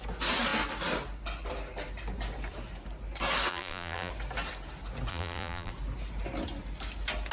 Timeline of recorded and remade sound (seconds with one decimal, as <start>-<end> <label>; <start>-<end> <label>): 0.0-3.5 recorded; 3.5-4.1 remade; 4.1-5.1 recorded; 5.1-5.7 remade; 5.7-7.3 recorded